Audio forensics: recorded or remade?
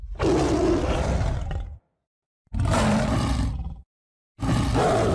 recorded